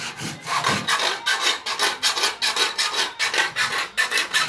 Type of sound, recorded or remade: recorded